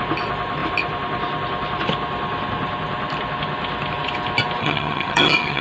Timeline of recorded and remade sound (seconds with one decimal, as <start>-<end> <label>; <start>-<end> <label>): 0.0-4.6 recorded; 4.6-5.6 remade